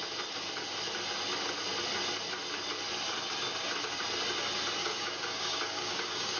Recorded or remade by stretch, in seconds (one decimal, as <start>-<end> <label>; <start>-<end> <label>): 0.0-4.8 recorded; 4.8-6.4 remade